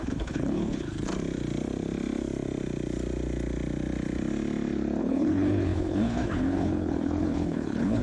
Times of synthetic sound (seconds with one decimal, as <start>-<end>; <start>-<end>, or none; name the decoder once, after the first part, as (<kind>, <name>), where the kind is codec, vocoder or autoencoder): 0.0-1.1 (codec, HILCodec); 5.0-8.0